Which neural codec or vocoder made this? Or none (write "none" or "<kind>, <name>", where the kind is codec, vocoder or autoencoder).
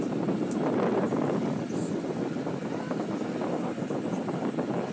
none